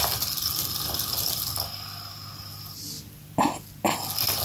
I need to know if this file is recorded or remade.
recorded